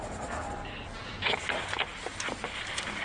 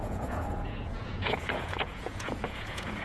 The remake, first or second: second